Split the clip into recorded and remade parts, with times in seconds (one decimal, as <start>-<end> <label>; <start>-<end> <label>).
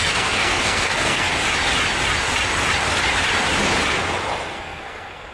0.0-1.3 remade; 1.3-4.5 recorded; 4.5-5.3 remade